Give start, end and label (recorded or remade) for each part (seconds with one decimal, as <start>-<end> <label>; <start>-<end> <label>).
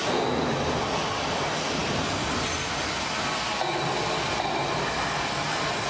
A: 0.0-5.9 recorded